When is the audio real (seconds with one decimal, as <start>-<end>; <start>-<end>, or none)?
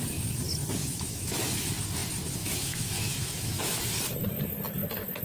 0.0-0.8; 1.7-2.4; 3.8-5.2